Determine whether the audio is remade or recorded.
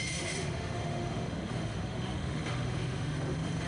remade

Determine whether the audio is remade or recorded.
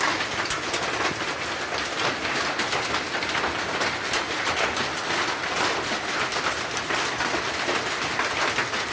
recorded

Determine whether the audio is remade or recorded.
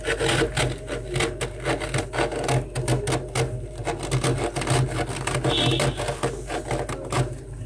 recorded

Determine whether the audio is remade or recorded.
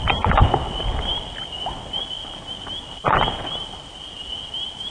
recorded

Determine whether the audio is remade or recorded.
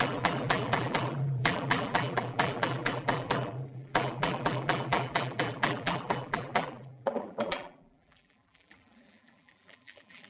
remade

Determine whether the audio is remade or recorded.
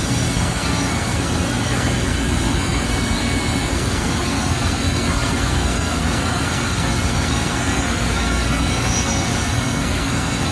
remade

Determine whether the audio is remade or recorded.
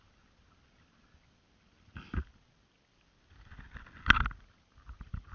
recorded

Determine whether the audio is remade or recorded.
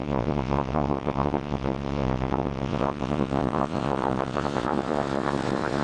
remade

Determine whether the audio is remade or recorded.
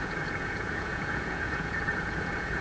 remade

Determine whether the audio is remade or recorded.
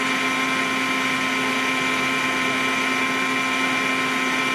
recorded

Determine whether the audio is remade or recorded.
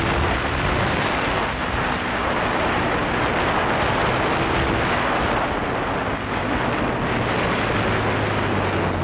recorded